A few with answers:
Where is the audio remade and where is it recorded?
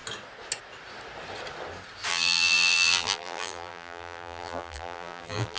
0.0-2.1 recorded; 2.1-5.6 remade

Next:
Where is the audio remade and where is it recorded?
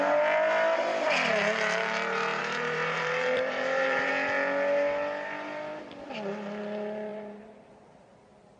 0.0-2.4 recorded; 2.4-4.1 remade; 4.1-7.1 recorded; 7.1-7.7 remade; 7.7-8.6 recorded